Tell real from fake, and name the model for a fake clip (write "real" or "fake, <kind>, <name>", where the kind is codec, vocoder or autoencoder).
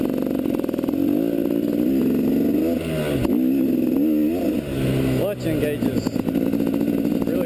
real